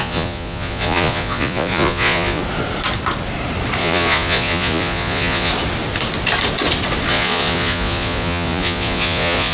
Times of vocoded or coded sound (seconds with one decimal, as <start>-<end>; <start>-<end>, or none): 0.0-2.4; 3.8-5.5; 7.1-9.5